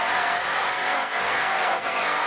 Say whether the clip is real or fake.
fake